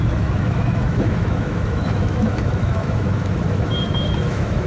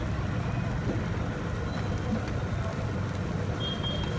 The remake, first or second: first